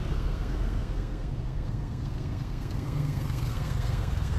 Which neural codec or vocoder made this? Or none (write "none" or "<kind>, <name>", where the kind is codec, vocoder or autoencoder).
codec, SNAC